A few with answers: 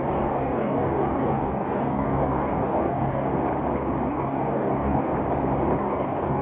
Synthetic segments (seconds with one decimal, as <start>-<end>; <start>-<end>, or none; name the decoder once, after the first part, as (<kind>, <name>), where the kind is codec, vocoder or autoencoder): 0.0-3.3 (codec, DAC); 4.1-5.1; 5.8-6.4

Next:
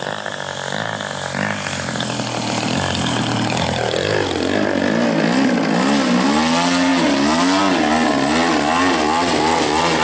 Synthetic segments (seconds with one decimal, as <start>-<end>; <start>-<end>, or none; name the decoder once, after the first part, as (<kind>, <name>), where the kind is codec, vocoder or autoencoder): none

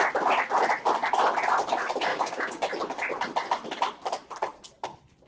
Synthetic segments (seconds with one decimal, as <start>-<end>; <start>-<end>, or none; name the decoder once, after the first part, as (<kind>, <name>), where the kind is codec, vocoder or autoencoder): 2.1-2.7 (codec, DAC)

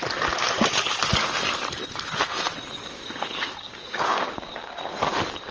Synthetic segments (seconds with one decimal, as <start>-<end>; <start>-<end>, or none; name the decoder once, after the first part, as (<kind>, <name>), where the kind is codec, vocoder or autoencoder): 2.8-4.7 (codec, DAC)

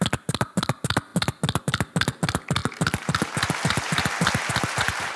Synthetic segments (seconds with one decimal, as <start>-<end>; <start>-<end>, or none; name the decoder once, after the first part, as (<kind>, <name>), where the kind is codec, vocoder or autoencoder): none